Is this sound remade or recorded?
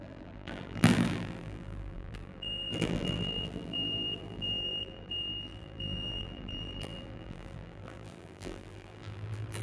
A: remade